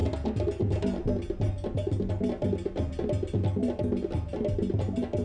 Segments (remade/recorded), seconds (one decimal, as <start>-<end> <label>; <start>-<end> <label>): 0.0-5.2 recorded